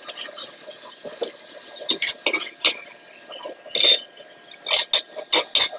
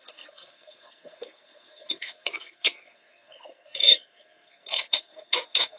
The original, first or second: first